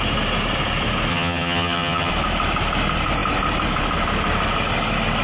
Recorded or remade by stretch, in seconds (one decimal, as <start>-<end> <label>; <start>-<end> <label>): 0.0-1.1 recorded; 1.1-2.1 remade; 2.1-5.2 recorded